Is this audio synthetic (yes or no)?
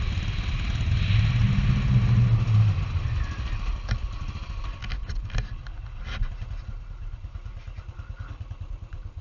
no